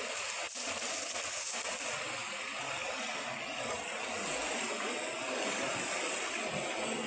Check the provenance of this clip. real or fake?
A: real